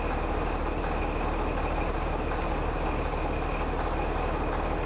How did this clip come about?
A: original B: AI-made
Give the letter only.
A